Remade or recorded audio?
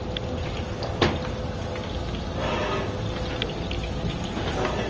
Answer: recorded